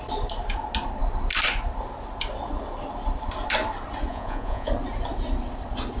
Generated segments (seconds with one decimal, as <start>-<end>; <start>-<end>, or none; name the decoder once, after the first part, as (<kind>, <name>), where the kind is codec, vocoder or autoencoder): 4.1-4.7 (vocoder, Vocos)